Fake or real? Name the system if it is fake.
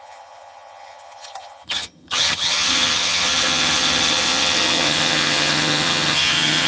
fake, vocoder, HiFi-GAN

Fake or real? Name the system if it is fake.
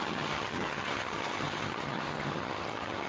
fake, vocoder, HiFi-GAN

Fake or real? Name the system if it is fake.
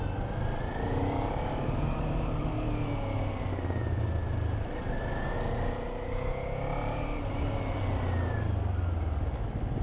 real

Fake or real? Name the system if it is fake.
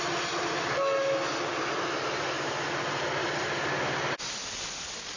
real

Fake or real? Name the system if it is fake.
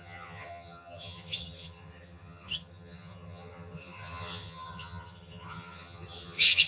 fake, vocoder, HiFi-GAN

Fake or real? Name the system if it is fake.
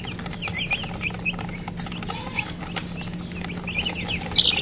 real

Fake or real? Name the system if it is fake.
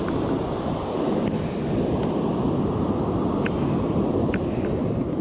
real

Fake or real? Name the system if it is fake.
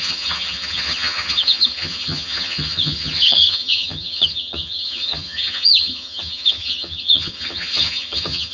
fake, vocoder, HiFi-GAN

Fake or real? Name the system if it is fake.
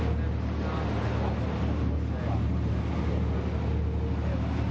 real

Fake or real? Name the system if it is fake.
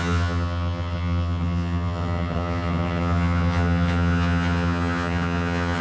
fake, vocoder, HiFi-GAN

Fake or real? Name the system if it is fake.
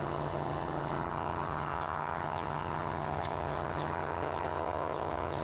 fake, vocoder, HiFi-GAN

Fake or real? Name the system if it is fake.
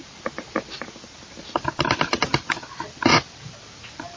real